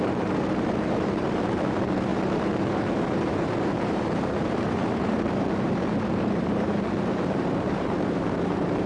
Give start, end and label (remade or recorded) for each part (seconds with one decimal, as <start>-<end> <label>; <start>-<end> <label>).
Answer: 0.0-8.9 remade